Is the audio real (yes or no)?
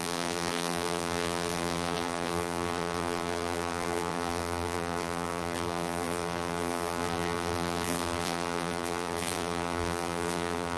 no